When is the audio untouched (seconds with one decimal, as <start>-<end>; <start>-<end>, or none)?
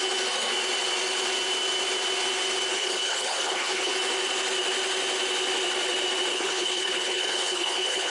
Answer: 0.0-2.7; 3.9-6.3